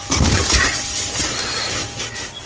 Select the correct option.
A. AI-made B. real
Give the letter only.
A